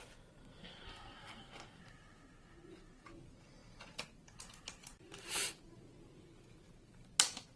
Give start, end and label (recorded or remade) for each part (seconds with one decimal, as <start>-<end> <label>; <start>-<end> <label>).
0.0-0.4 recorded; 0.4-1.8 remade; 1.8-7.6 recorded